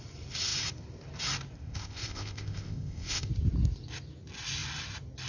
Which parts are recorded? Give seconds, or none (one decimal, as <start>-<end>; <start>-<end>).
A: 0.0-1.6; 3.3-5.3

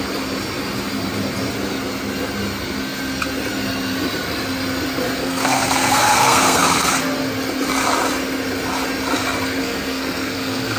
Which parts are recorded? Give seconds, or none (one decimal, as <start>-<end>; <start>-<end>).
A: 0.0-5.2; 7.0-9.6